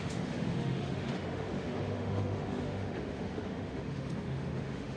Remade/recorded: remade